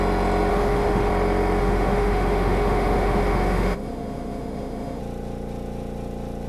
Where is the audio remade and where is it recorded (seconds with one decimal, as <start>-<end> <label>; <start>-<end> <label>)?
0.0-0.5 recorded; 0.5-1.1 remade; 1.1-1.6 recorded; 1.6-5.0 remade; 5.0-6.5 recorded